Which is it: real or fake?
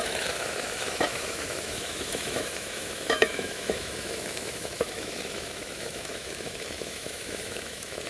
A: fake